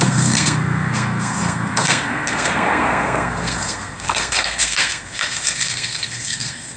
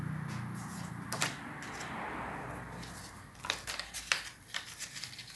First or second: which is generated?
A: first